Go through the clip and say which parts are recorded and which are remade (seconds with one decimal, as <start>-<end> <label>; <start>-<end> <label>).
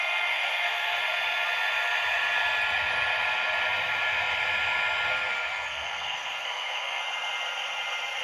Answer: 0.0-1.0 remade; 1.0-5.1 recorded; 5.1-7.0 remade; 7.0-8.2 recorded